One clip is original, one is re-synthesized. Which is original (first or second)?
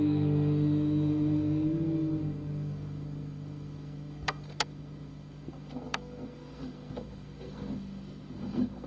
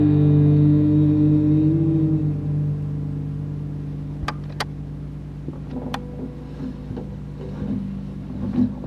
second